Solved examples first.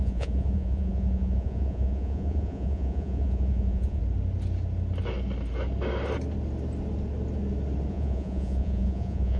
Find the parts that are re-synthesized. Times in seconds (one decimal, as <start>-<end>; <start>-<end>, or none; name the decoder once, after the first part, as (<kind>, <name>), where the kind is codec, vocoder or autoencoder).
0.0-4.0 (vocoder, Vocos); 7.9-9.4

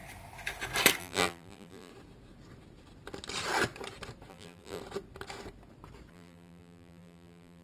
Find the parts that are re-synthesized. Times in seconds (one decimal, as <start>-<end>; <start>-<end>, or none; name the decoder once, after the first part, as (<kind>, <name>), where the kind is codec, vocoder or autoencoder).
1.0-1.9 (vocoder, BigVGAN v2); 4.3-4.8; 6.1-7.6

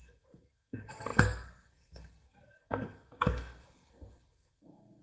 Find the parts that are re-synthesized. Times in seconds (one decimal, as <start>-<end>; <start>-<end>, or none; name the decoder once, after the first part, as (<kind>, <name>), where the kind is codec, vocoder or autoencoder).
0.0-5.0 (codec, SNAC)

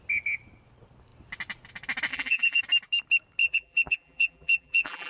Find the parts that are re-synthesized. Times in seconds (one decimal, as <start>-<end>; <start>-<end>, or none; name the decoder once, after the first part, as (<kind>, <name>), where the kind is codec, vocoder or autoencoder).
2.1-2.6 (vocoder, BigVGAN v2); 3.4-5.1

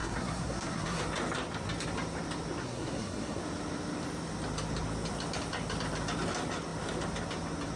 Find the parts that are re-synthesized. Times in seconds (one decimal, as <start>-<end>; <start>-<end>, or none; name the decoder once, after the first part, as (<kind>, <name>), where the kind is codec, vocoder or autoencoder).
0.0-1.0 (codec, SNAC); 2.6-3.4

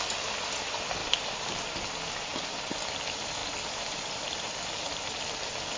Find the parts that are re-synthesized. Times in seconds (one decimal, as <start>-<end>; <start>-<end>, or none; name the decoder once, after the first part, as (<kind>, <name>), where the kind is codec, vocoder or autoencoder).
3.4-5.3 (vocoder, BigVGAN v2)